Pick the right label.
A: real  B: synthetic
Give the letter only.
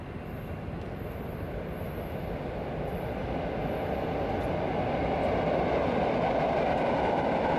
A